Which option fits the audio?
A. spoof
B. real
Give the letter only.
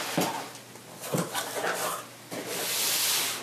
B